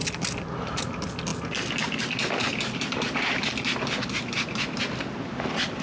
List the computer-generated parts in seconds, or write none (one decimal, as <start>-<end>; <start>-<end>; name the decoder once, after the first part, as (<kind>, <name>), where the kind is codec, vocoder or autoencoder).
none